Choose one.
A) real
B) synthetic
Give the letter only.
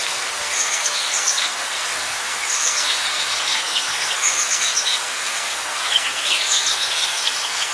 B